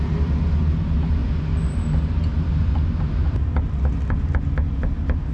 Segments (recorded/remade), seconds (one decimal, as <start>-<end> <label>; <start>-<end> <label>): 0.0-5.3 recorded